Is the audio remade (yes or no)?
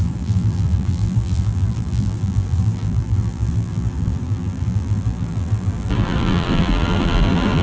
yes